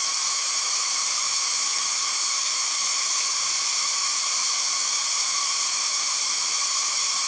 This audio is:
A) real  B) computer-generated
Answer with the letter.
B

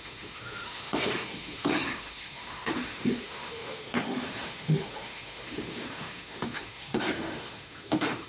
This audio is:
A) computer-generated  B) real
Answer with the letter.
A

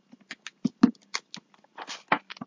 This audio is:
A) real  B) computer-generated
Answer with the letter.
A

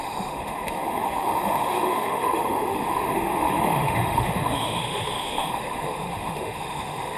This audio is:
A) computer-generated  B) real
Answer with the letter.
A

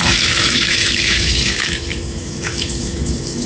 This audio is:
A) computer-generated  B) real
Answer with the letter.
A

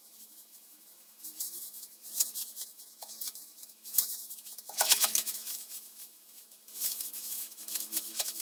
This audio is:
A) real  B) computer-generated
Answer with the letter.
B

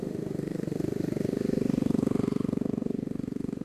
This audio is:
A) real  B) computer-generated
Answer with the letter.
B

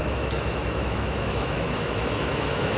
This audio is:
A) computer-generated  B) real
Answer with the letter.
A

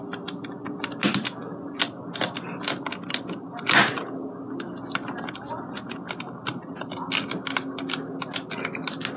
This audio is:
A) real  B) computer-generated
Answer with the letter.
A